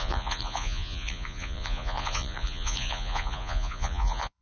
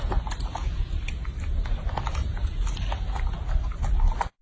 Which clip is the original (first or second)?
second